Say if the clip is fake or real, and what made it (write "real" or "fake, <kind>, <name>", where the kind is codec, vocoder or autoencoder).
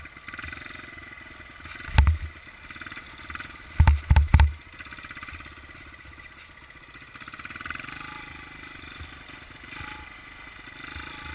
real